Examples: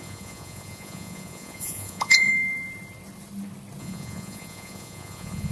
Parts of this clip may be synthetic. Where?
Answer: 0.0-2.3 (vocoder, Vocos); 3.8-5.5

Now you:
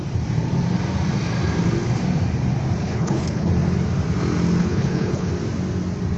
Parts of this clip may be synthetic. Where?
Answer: 2.8-3.5 (codec, HILCodec); 4.6-5.3

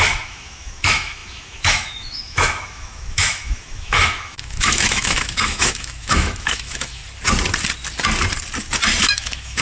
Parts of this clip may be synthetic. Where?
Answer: 0.0-7.0 (autoencoder, DAC-VAE); 9.0-9.6